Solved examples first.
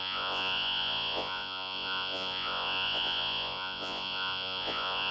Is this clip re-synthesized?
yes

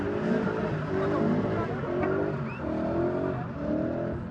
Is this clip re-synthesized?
no